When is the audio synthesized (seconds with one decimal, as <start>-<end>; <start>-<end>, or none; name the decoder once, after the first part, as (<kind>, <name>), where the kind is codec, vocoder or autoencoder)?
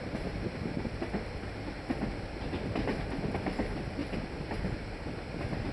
none